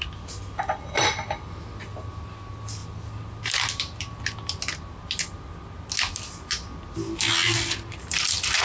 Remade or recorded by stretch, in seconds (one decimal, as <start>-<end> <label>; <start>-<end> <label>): 0.0-8.6 recorded